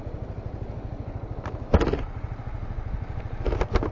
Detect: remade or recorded recorded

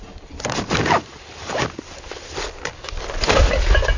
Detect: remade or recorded recorded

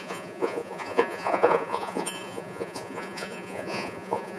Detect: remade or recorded remade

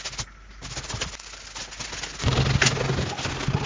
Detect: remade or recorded recorded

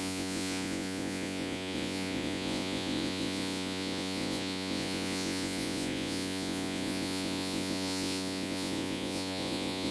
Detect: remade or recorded remade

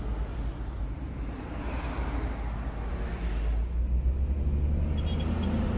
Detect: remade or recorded recorded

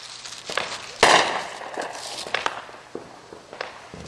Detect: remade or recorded recorded